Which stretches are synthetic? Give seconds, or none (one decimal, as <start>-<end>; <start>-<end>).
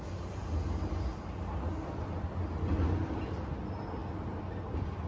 none